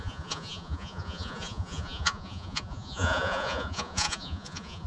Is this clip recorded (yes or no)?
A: no